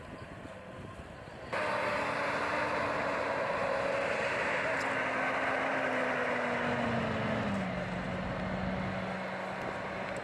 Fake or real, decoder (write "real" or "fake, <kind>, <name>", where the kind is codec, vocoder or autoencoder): real